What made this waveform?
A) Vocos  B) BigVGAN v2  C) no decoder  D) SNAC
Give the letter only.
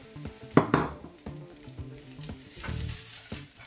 B